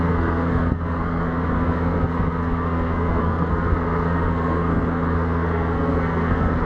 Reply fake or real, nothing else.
fake